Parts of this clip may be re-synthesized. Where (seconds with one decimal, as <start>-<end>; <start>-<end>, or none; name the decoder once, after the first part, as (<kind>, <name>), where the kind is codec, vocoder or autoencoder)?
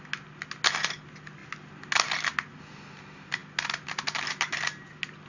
none